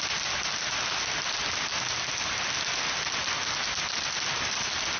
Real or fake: real